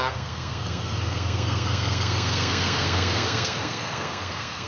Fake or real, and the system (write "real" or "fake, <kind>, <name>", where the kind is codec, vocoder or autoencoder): fake, codec, SNAC